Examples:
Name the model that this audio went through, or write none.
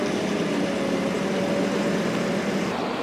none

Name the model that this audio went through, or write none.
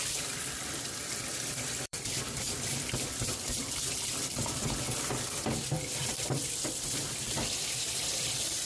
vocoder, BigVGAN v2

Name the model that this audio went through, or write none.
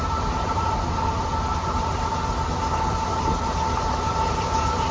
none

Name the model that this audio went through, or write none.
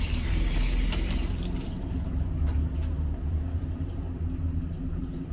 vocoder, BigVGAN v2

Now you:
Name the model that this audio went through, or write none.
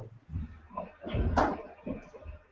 vocoder, BigVGAN v2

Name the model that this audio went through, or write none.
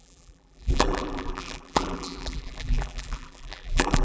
vocoder, BigVGAN v2